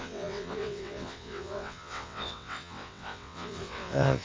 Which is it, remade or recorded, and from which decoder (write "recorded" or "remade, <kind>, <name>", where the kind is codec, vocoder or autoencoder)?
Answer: remade, vocoder, WaveNeXt